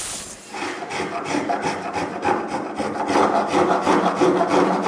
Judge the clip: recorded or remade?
recorded